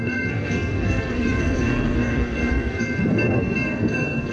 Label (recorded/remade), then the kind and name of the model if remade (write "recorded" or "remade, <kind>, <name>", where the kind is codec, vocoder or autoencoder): remade, codec, SNAC